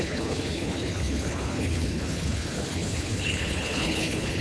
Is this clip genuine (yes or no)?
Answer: no